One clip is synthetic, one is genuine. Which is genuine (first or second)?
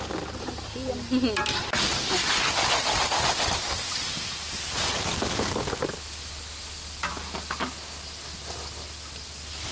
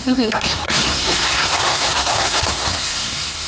first